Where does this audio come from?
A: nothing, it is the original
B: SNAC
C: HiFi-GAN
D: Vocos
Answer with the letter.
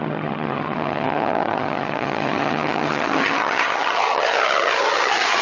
C